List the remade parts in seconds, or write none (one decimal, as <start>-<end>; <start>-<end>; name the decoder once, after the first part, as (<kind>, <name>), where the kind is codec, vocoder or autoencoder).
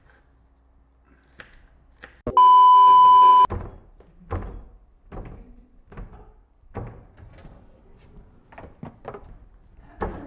none